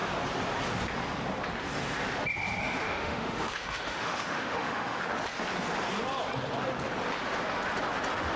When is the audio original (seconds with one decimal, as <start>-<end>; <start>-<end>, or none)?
0.0-2.6; 5.0-8.4